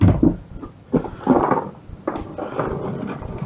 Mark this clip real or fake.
real